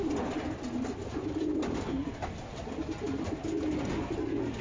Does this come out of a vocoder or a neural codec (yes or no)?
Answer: no